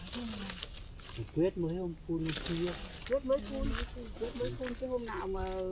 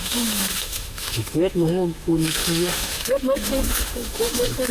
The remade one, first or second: second